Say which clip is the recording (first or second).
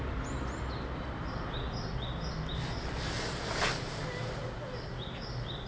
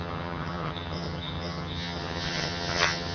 first